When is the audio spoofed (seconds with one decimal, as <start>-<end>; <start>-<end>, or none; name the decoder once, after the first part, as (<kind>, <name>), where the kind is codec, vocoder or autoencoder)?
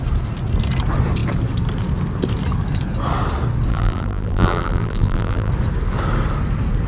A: 3.7-5.5 (vocoder, BigVGAN v2)